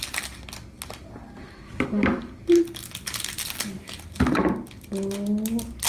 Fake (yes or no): no